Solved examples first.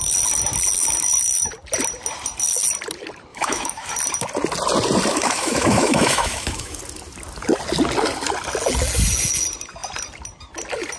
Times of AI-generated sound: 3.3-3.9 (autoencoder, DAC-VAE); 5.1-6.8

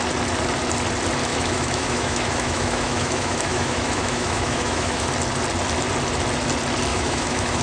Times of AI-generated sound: 1.3-5.1 (autoencoder, DAC-VAE); 6.9-7.6